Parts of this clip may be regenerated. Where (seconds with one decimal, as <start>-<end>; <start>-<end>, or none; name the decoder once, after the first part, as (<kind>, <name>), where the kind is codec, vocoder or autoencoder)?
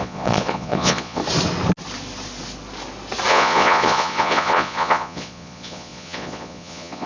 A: 0.0-1.2 (vocoder, Vocos); 3.3-7.1